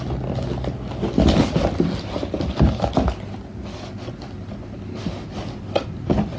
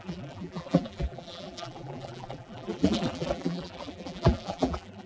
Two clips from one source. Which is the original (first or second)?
first